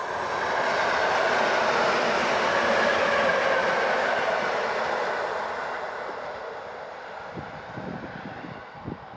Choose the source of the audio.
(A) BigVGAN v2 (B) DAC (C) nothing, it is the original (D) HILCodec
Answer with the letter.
C